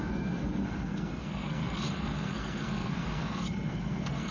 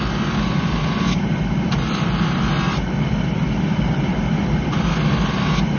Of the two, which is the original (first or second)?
second